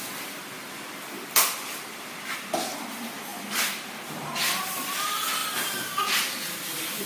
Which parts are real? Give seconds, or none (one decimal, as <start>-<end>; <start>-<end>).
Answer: 0.4-2.9; 5.4-7.1